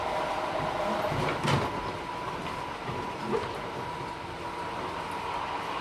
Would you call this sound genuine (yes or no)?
yes